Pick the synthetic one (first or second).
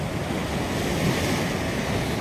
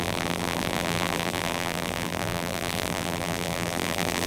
second